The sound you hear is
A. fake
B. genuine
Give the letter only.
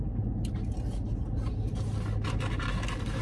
B